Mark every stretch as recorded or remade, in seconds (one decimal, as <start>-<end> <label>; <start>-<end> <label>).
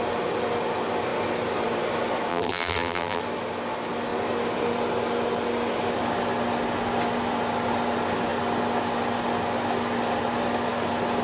0.0-2.3 recorded; 2.3-3.2 remade; 3.2-11.2 recorded